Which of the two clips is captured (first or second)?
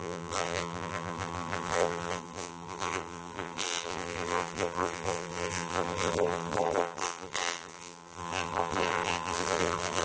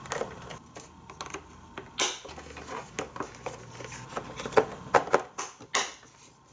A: second